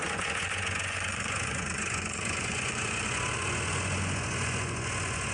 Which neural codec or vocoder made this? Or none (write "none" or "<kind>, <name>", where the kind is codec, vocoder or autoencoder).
vocoder, Vocos